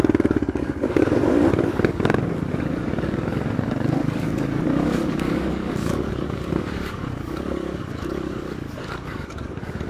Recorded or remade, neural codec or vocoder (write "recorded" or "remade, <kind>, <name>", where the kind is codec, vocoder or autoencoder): remade, codec, DAC